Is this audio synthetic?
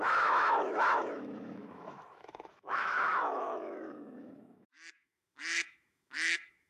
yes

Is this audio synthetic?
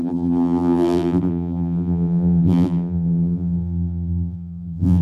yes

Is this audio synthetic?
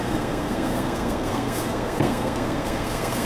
yes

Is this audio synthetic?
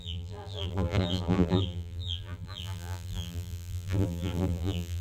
yes